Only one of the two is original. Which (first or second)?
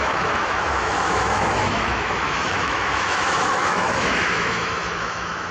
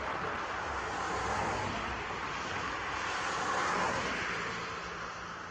second